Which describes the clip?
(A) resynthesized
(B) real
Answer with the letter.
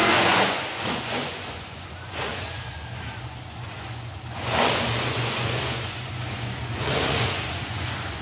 A